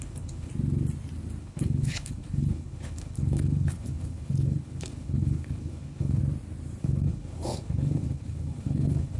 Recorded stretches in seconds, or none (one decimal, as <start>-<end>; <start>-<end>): 0.5-1.4; 6.2-6.8